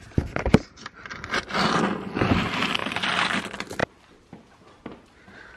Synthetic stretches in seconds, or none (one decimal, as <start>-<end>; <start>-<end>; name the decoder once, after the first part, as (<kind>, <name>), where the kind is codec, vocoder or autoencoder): 3.8-4.6 (vocoder, BigVGAN v2)